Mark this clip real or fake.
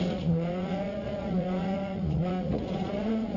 fake